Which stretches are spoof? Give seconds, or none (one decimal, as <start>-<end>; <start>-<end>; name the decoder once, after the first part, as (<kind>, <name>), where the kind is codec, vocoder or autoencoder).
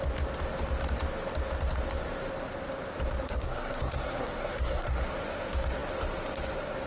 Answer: 3.2-5.1 (codec, SNAC)